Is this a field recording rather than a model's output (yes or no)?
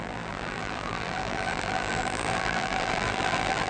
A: no